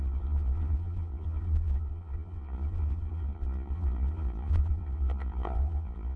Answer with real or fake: fake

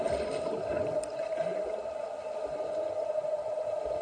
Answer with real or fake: real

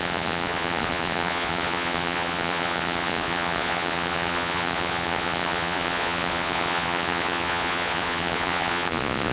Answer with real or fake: fake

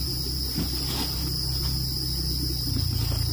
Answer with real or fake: real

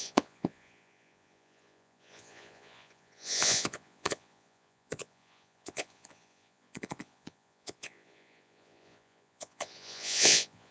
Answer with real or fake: fake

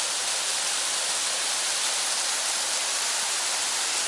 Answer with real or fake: real